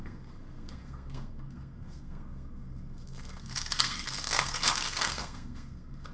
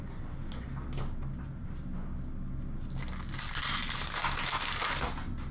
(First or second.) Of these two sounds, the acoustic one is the second